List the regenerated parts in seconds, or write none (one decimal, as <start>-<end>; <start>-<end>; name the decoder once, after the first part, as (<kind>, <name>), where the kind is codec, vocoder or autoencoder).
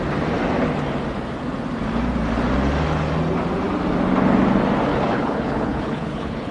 4.9-6.5 (codec, HILCodec)